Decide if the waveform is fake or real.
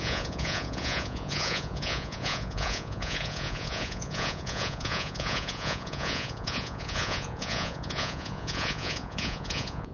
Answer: fake